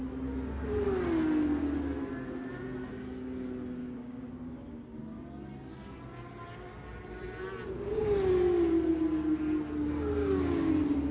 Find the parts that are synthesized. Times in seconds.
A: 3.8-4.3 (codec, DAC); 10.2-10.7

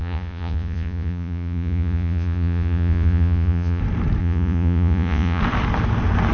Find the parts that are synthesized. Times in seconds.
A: 0.0-3.8 (vocoder, Vocos); 4.2-5.4

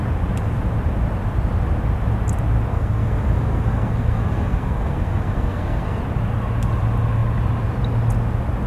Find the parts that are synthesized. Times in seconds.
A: 2.7-6.0 (codec, SNAC)

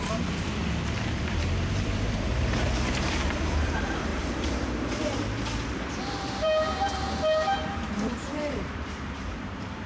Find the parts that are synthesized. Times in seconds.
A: 0.0-0.6 (vocoder, BigVGAN v2); 1.3-9.9